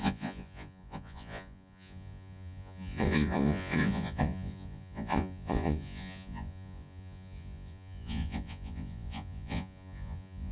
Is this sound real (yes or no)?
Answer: no